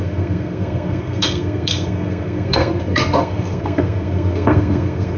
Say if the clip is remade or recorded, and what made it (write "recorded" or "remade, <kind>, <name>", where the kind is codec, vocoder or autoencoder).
remade, codec, SNAC